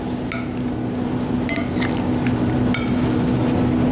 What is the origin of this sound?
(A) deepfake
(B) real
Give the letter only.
B